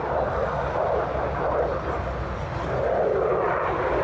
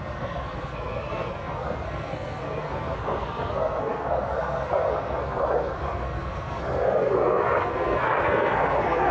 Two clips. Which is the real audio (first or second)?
first